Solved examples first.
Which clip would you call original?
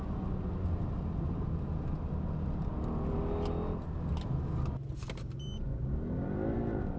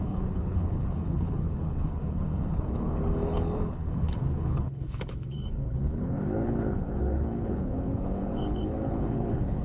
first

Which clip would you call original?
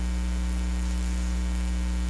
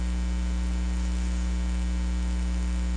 second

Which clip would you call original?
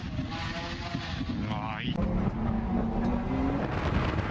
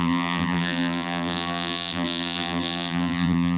first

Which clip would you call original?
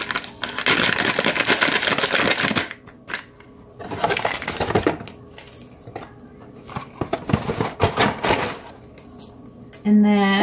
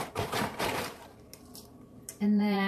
first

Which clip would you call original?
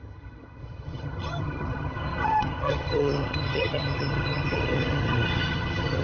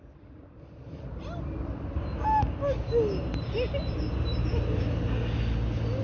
second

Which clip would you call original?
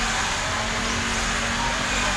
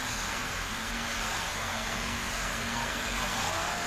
first